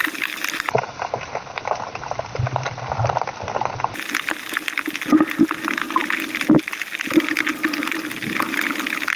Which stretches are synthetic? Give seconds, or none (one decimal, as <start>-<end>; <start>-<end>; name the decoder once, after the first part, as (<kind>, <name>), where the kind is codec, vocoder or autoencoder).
0.0-1.6 (vocoder, BigVGAN v2)